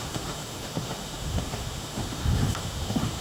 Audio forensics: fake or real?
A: fake